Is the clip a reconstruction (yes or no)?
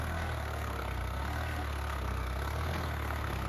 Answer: yes